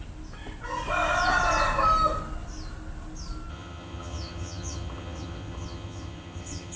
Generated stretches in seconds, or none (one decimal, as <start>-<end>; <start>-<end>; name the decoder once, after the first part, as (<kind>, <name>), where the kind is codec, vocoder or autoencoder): 3.5-6.8 (vocoder, HiFi-GAN)